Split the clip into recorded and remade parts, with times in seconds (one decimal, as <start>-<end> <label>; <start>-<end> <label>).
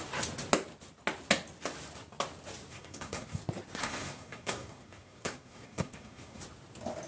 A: 0.0-2.7 recorded; 2.7-3.4 remade; 3.4-3.8 recorded; 3.8-6.4 remade; 6.4-7.1 recorded